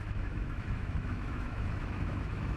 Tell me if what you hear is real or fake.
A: fake